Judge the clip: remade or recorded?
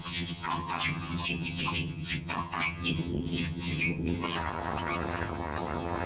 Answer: remade